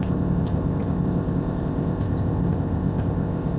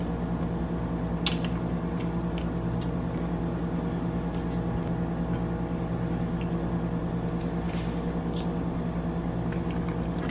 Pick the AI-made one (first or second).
first